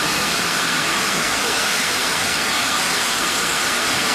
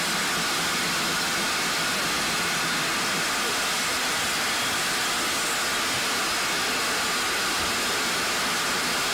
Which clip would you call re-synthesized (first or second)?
first